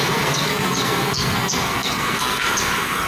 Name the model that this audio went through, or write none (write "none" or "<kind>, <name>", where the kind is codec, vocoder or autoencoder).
codec, SNAC